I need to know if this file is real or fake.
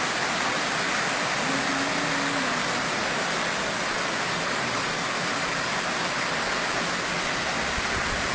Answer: real